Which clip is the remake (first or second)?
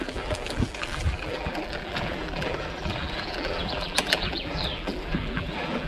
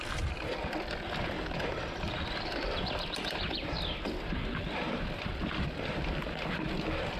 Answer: first